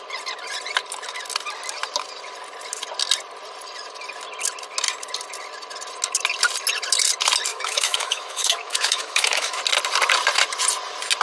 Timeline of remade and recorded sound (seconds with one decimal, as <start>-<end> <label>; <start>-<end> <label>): 0.0-7.5 recorded; 7.5-9.6 remade; 9.6-11.2 recorded